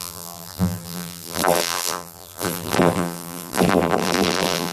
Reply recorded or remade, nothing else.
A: remade